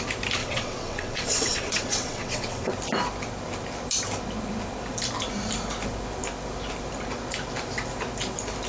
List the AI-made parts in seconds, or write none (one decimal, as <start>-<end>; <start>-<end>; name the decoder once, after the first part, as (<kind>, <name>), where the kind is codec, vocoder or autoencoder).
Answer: 0.4-2.7 (vocoder, WaveNeXt)